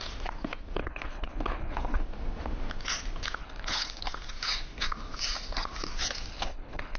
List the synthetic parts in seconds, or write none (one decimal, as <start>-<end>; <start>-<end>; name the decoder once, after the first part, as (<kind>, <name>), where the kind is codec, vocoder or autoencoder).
0.8-2.0 (codec, HILCodec); 3.4-4.0; 6.3-7.0